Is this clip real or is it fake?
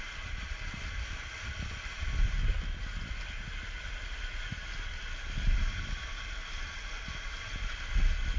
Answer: real